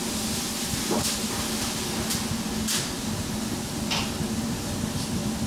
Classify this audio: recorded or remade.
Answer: recorded